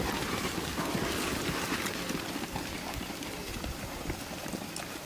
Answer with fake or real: real